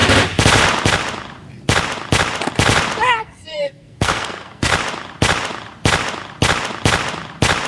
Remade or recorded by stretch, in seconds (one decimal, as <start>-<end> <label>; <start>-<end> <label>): 0.0-3.2 recorded; 3.2-4.7 remade; 4.7-7.7 recorded